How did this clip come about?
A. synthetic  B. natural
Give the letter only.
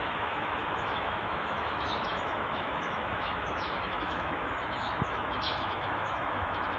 A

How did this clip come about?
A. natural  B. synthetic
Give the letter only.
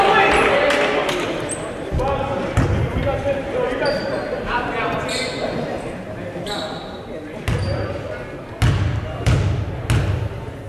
A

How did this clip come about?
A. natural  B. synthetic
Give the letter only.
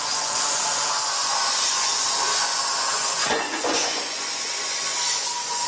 B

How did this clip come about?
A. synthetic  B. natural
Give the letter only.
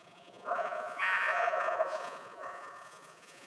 A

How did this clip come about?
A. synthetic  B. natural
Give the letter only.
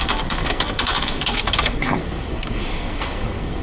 A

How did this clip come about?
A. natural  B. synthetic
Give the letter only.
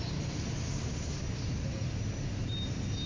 A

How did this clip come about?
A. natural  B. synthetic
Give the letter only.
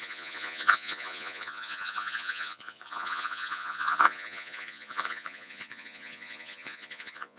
B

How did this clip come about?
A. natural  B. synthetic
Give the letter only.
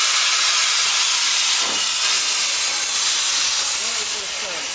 A